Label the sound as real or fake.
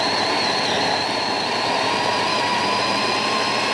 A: fake